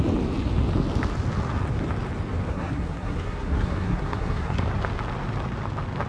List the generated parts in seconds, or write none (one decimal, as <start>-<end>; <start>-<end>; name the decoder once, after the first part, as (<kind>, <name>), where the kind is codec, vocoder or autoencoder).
2.5-4.6 (codec, SNAC)